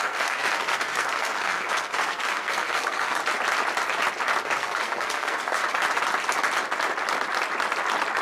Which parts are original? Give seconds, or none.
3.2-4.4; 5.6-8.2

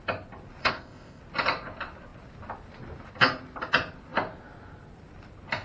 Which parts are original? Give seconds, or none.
0.0-0.6; 1.2-5.6

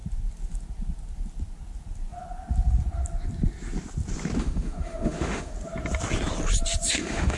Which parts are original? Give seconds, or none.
0.0-4.4; 5.5-6.9

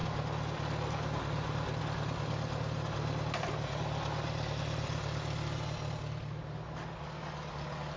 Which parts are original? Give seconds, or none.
0.0-8.0

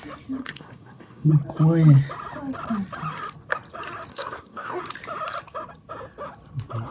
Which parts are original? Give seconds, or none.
0.0-0.4; 1.3-4.1; 4.8-6.9

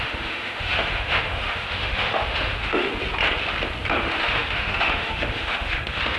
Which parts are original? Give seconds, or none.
2.9-4.0

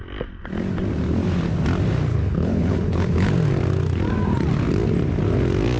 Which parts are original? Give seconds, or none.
0.0-2.1; 3.3-5.8